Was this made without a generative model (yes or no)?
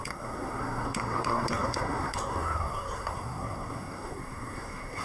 no